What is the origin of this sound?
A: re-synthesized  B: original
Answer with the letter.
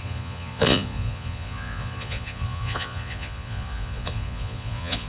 A